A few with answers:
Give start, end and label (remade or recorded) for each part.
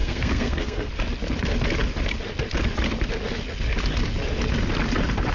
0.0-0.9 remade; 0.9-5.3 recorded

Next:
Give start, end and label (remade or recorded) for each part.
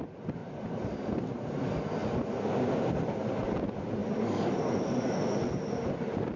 0.0-0.4 recorded; 0.4-1.6 remade; 1.6-4.0 recorded; 4.0-5.1 remade; 5.1-6.4 recorded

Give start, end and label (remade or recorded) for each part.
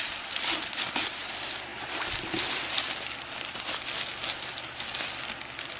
0.0-5.8 recorded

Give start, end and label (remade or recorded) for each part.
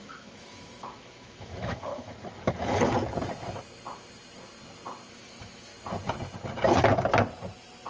0.0-1.9 remade; 1.9-5.1 recorded; 5.1-5.7 remade; 5.7-7.9 recorded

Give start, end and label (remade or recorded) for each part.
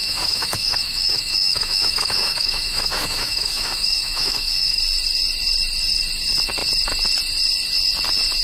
0.0-4.8 remade; 4.8-8.4 recorded